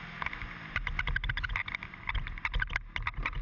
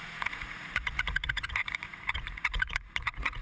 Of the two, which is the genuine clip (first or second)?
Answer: first